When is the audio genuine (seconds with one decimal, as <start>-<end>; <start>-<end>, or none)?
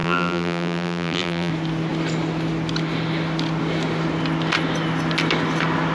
1.5-5.9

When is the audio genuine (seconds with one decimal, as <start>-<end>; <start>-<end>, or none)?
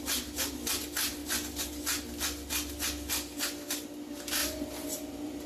0.0-4.4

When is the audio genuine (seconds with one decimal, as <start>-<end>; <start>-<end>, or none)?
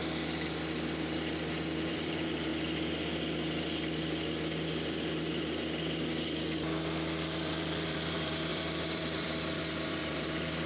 0.0-1.9; 2.5-7.3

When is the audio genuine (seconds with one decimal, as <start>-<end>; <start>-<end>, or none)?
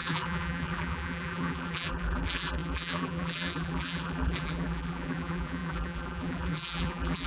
none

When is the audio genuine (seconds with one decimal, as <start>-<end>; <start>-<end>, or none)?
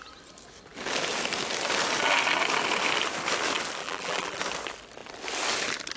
0.0-3.8; 4.4-6.0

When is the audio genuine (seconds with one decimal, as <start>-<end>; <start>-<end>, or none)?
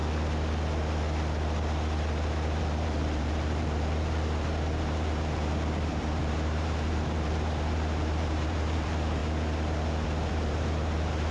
0.0-2.6; 9.2-10.3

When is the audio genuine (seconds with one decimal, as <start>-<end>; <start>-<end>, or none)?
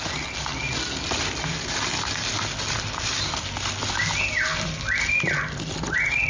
0.0-6.3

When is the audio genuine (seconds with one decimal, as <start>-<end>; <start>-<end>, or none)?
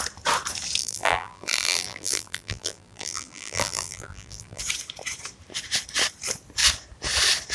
0.0-0.8; 4.6-7.5